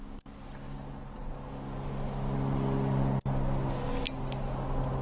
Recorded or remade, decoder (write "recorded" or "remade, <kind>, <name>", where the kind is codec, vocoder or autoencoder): recorded